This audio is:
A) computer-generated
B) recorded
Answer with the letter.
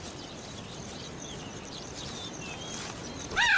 A